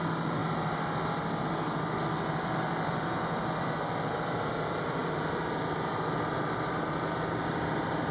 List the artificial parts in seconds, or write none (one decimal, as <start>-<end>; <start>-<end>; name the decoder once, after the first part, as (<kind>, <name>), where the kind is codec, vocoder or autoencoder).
none